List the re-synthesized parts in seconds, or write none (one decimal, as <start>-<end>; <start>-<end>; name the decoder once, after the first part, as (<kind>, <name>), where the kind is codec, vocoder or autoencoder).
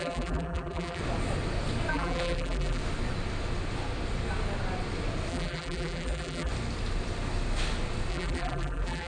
0.0-1.0 (vocoder, BigVGAN v2); 1.9-2.8; 5.3-6.5; 8.1-9.1